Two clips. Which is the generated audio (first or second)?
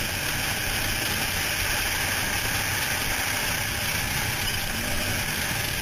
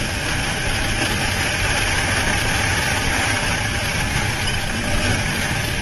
second